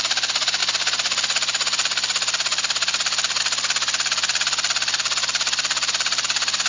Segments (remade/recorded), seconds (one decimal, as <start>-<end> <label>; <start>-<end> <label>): 0.0-6.7 recorded